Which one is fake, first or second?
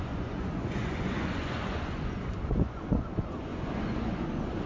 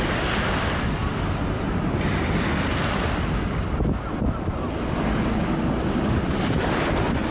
first